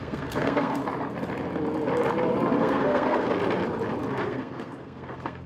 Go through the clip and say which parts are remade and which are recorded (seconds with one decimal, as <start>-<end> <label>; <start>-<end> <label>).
0.0-0.8 remade; 0.8-2.6 recorded; 2.6-3.3 remade; 3.3-4.1 recorded; 4.1-5.5 remade